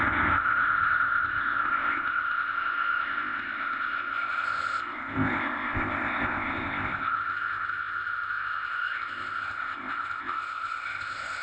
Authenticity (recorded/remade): remade